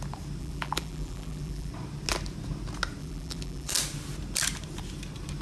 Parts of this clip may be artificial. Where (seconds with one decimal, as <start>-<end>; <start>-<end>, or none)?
0.4-1.7; 3.0-3.7